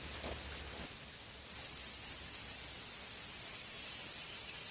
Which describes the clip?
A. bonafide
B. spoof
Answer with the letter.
A